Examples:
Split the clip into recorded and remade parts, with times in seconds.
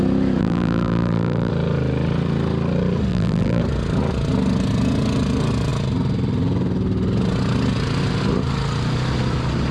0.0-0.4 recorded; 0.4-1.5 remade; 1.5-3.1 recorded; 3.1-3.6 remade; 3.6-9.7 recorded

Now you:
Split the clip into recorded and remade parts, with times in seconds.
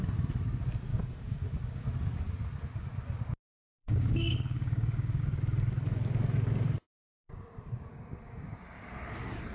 0.0-0.9 recorded; 0.9-1.9 remade; 1.9-3.8 recorded; 3.8-5.2 remade; 5.2-7.9 recorded; 7.9-8.6 remade; 8.6-9.5 recorded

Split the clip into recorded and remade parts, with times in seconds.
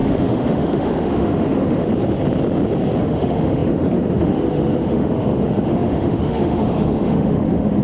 0.0-1.9 remade; 1.9-3.0 recorded; 3.0-7.8 remade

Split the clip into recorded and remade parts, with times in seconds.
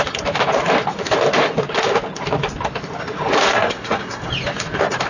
0.0-3.5 recorded; 3.5-4.3 remade; 4.3-5.1 recorded